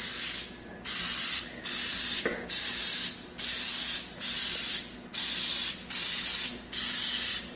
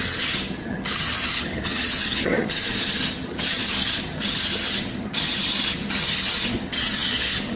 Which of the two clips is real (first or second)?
first